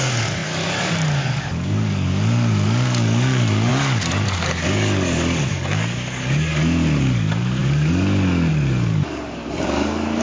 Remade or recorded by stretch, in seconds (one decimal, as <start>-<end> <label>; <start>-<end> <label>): 0.0-10.2 remade